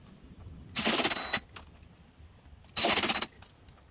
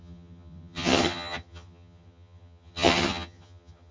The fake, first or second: second